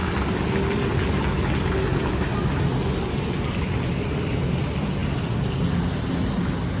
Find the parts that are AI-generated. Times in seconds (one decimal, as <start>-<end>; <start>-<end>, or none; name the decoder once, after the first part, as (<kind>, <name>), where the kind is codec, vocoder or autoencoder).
none